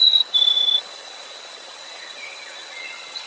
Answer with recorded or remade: remade